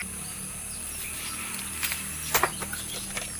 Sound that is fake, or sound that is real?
real